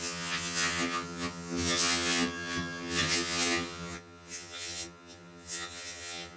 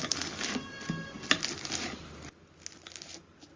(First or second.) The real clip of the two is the second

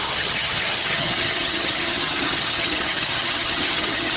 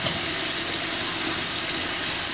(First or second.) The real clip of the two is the second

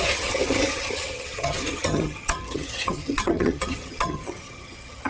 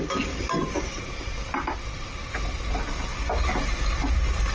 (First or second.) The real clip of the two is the second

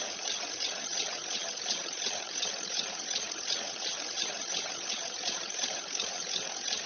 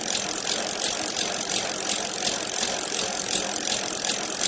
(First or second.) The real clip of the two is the second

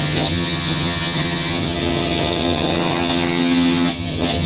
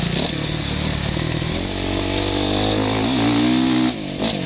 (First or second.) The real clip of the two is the second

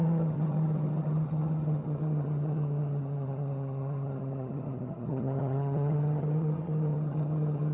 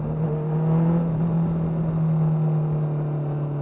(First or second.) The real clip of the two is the second